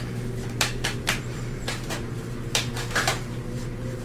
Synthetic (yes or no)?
yes